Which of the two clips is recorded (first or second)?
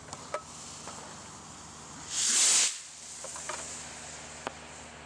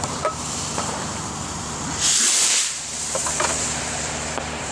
first